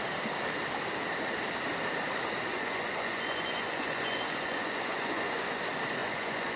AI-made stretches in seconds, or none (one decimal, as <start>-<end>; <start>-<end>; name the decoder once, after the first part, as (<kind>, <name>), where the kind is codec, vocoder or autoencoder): 2.5-5.6 (vocoder, Vocos); 6.0-6.6